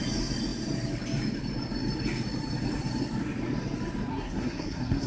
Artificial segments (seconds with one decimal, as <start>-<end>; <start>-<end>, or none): 4.1-5.1